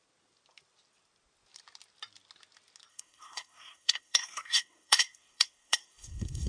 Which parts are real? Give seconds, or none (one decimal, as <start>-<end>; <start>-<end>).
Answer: 0.0-2.9